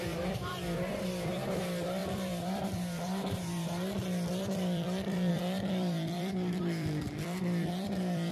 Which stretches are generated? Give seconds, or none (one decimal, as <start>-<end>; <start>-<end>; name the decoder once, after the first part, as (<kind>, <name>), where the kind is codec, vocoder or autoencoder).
0.0-8.3 (vocoder, BigVGAN v2)